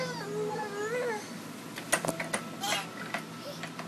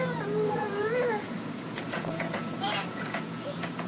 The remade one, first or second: second